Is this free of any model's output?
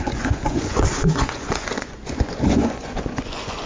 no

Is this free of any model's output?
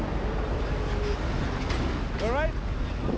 yes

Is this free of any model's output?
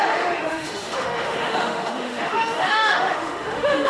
no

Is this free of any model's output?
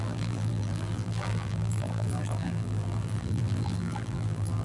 no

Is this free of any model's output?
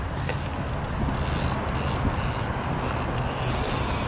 yes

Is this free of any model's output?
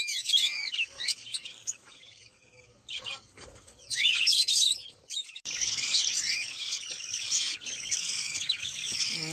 no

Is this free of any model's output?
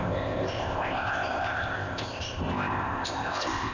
no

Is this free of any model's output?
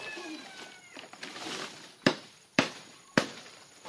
yes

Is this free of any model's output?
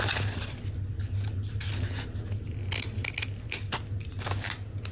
yes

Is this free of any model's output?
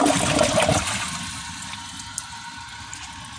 yes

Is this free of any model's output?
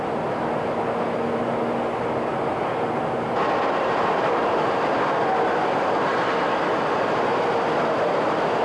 yes